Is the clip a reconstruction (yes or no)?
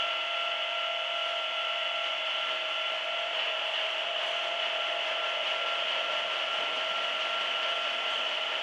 no